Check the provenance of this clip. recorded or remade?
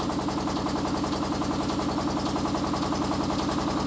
recorded